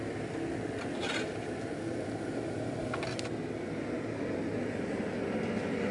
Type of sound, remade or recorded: recorded